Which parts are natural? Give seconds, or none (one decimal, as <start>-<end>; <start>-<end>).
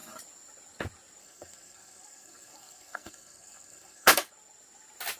0.0-1.2; 4.3-5.2